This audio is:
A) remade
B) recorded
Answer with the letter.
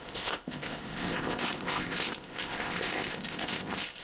A